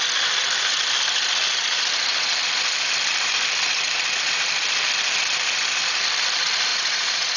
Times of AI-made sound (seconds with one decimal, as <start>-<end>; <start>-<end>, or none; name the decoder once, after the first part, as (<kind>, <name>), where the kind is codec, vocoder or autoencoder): 6.7-7.4 (vocoder, Vocos)